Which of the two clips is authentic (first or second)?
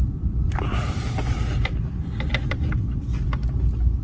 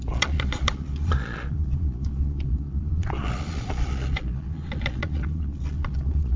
first